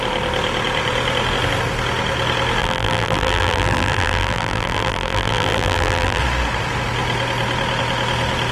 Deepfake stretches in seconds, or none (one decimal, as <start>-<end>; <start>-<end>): 2.6-6.2